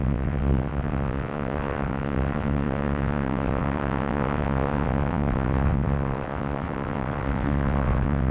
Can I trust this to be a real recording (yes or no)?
no